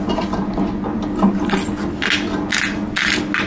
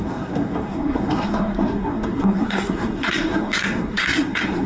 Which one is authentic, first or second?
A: first